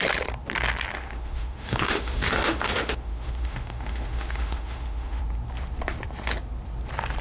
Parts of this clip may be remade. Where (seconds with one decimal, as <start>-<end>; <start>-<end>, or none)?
0.9-5.2